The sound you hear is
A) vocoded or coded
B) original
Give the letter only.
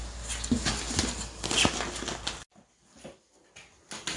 B